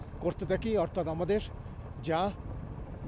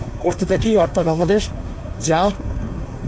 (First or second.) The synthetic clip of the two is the second